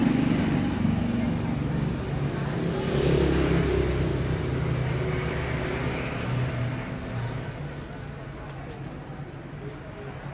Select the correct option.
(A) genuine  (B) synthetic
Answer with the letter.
A